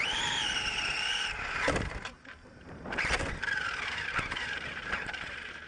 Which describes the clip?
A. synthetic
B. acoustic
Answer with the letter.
A